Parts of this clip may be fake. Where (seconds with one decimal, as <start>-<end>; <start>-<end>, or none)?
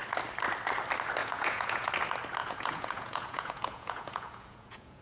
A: 1.2-1.9; 2.4-5.0